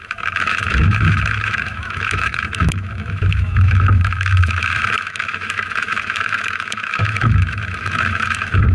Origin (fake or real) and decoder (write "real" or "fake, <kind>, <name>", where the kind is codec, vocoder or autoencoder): fake, autoencoder, DAC-VAE